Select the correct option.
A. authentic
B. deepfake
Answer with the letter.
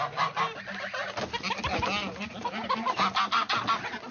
A